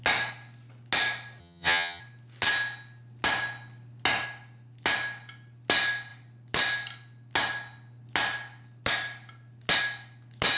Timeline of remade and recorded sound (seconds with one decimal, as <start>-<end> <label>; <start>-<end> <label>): 0.0-1.4 recorded; 1.4-2.0 remade; 2.0-10.6 recorded